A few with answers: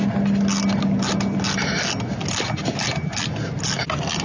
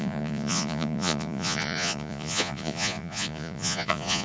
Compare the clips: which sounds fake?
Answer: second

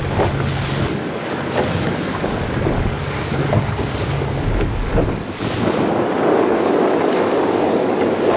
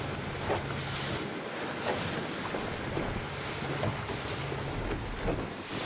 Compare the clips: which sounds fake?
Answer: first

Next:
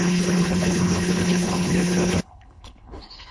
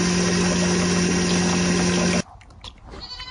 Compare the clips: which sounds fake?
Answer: first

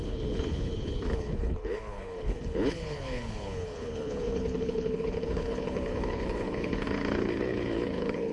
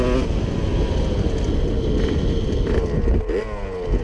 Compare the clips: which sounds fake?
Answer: first